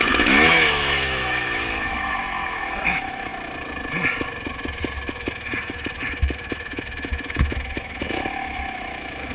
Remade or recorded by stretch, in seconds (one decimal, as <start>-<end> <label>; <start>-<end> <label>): 0.0-3.3 remade; 3.3-5.1 recorded; 5.1-9.3 remade